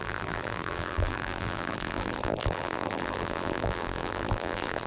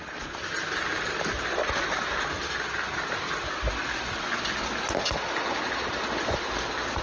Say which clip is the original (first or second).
second